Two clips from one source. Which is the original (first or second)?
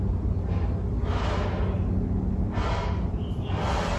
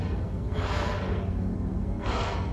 first